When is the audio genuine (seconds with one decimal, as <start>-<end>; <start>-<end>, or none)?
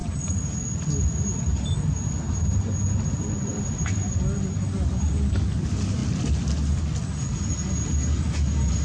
0.6-3.5; 4.2-8.8